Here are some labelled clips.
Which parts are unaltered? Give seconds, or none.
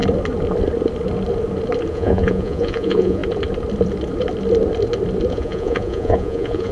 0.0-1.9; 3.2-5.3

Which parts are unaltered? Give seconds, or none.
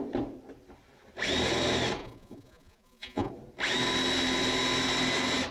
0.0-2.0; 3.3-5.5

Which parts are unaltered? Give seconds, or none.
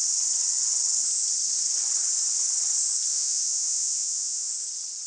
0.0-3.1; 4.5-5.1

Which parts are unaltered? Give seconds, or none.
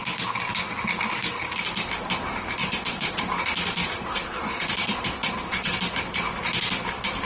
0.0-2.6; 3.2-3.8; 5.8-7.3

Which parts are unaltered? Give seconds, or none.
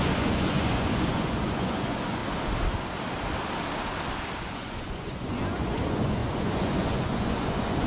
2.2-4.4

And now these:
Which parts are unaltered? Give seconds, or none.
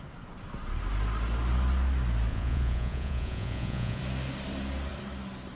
0.0-2.3; 4.0-5.6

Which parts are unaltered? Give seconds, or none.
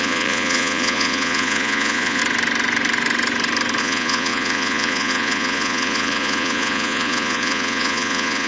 2.2-3.8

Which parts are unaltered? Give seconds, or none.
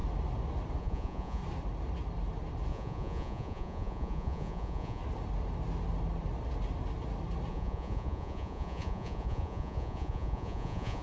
0.0-0.8; 1.4-2.7; 5.0-7.5